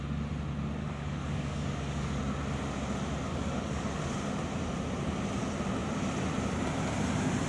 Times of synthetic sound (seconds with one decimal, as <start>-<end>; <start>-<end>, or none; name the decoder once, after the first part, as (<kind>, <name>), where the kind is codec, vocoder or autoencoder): 0.8-2.2 (codec, DAC); 3.3-4.0